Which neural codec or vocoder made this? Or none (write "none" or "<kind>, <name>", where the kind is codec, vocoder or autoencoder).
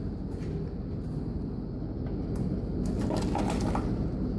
none